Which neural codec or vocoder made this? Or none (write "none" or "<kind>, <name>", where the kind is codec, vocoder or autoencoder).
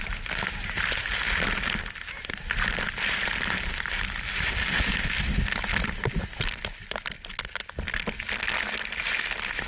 none